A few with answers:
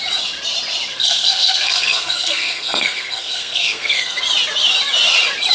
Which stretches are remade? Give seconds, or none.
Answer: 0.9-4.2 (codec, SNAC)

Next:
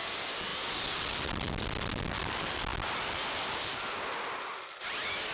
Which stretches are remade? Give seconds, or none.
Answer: none

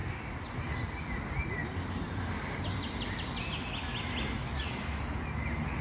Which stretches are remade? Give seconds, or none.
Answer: none

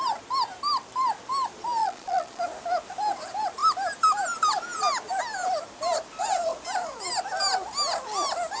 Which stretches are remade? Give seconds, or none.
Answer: 1.8-2.4 (vocoder, Vocos)

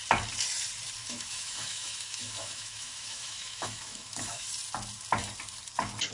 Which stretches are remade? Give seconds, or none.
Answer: 1.0-4.5 (autoencoder, DAC-VAE)

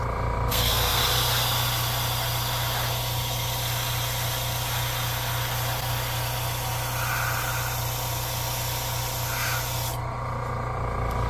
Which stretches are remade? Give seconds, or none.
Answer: 0.5-1.0 (codec, SNAC)

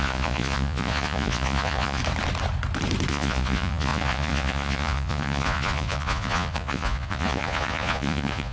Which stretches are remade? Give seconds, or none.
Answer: 0.0-2.0 (vocoder, Vocos); 3.1-8.5

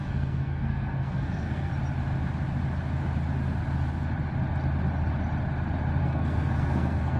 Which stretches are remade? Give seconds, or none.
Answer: 0.0-1.7 (codec, SNAC); 6.0-7.2